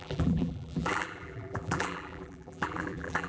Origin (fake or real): fake